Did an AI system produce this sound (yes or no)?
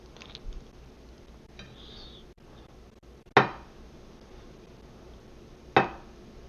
no